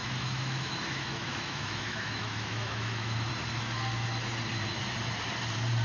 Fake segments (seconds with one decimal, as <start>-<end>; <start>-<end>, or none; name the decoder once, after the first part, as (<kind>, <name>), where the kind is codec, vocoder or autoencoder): 0.0-3.3 (autoencoder, DAC-VAE)